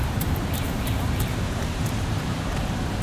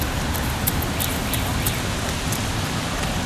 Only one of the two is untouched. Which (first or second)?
second